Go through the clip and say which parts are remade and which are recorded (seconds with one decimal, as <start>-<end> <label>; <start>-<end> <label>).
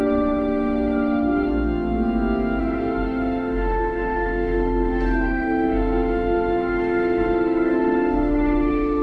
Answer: 0.0-1.5 remade; 1.5-2.6 recorded; 2.6-9.0 remade